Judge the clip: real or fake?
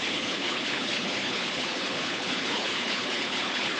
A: fake